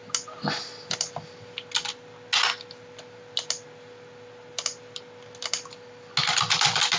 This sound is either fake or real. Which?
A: real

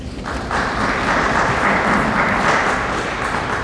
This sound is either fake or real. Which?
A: real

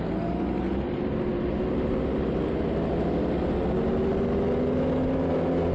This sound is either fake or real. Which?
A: real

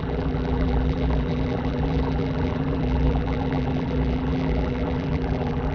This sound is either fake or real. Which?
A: fake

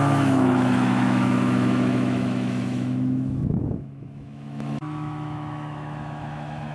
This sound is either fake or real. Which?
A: fake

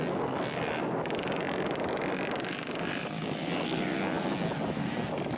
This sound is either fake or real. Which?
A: real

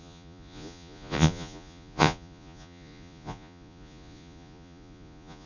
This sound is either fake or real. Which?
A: fake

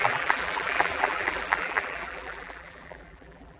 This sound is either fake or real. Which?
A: fake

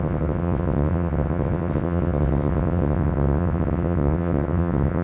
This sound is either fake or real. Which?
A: fake